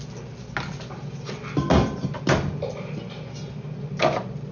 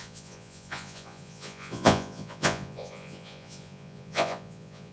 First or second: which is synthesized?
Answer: second